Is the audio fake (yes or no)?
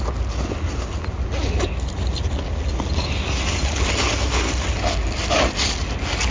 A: no